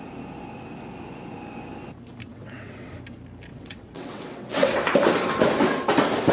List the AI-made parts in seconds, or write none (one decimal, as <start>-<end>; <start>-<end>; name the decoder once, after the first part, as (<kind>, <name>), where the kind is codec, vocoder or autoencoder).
2.3-2.9 (vocoder, WaveNeXt); 3.5-4.8